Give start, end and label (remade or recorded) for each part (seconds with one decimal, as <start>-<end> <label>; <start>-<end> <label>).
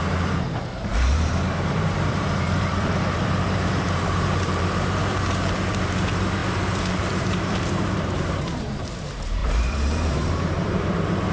0.0-11.3 remade